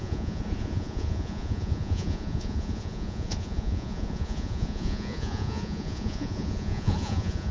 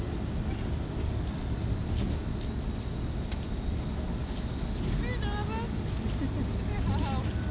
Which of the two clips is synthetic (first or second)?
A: first